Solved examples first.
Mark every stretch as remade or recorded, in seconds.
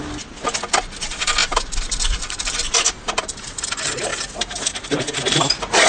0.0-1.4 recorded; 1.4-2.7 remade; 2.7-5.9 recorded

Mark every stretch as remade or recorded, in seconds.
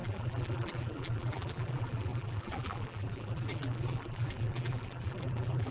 0.0-5.7 remade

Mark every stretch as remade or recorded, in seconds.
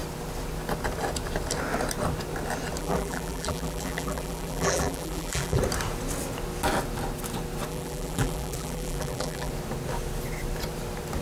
0.0-2.8 recorded; 2.8-5.6 remade; 5.6-7.7 recorded; 7.7-9.5 remade; 9.5-11.2 recorded